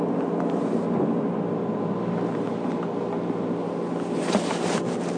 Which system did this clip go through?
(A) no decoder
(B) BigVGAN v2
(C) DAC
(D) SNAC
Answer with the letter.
A